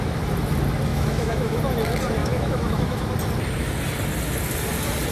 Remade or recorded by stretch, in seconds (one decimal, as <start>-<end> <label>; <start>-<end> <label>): 0.0-0.9 recorded; 0.9-1.6 remade; 1.6-2.2 recorded; 2.2-3.0 remade; 3.0-5.1 recorded